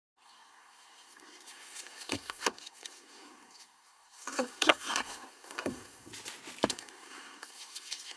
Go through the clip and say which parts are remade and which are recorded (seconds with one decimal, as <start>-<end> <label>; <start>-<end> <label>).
0.0-6.1 remade; 6.1-6.7 recorded; 6.7-8.2 remade

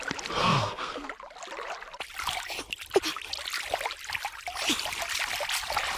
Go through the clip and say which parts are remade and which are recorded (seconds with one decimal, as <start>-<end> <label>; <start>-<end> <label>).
0.0-0.4 recorded; 0.4-1.1 remade; 1.1-6.0 recorded